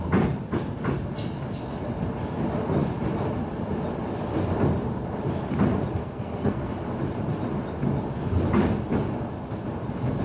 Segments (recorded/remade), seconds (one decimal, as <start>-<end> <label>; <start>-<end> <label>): 0.0-6.0 recorded; 6.0-6.7 remade; 6.7-10.2 recorded